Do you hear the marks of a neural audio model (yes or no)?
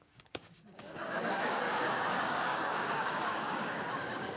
yes